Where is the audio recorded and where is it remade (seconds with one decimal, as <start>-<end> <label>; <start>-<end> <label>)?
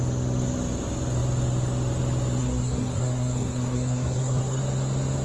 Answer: 0.0-2.4 recorded; 2.4-4.6 remade; 4.6-5.2 recorded